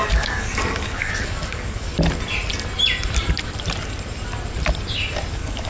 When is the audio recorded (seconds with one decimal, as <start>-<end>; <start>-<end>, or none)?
1.9-5.3